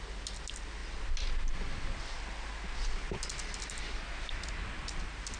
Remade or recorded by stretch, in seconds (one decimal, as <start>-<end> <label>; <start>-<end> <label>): 0.0-5.4 recorded